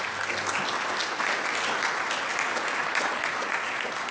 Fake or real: real